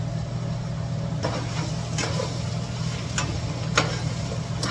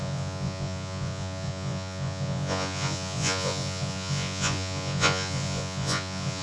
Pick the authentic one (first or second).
first